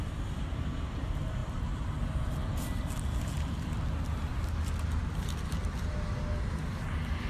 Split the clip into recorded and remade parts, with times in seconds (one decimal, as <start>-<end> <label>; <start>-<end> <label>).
0.0-7.3 recorded